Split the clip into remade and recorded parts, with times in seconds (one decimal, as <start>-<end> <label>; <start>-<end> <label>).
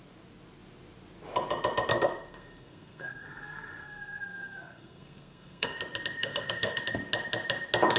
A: 0.0-1.9 recorded; 1.9-5.8 remade; 5.8-6.2 recorded; 6.2-6.8 remade; 6.8-8.0 recorded